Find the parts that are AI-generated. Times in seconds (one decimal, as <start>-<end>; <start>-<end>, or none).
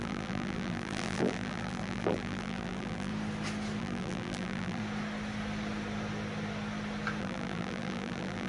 0.0-3.1; 3.8-4.8; 7.2-8.5